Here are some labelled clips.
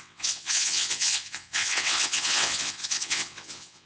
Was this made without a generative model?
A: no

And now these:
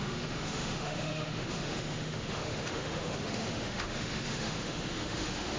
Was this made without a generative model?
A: no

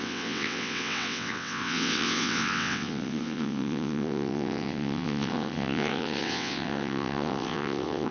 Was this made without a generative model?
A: no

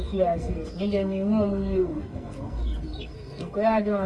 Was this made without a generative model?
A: no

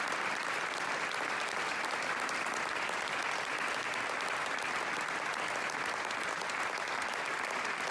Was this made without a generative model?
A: yes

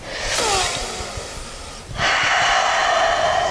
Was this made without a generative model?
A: yes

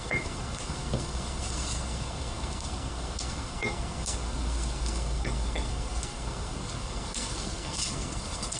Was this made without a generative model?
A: no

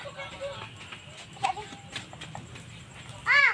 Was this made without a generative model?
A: yes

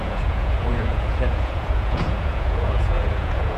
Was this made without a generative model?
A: no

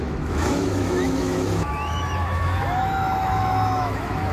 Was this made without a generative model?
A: no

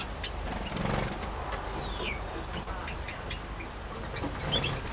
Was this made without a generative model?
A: yes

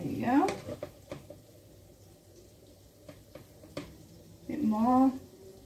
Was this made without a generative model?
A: no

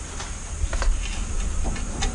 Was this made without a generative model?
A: yes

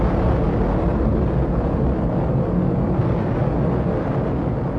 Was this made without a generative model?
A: yes